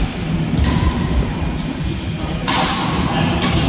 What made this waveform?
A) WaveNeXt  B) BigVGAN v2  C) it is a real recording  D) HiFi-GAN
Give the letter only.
C